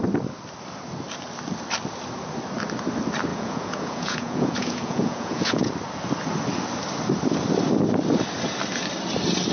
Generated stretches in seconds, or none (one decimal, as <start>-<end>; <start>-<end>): 3.3-5.7